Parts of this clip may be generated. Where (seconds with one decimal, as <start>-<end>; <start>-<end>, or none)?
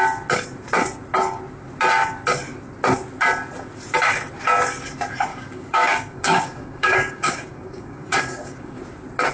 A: 5.3-8.8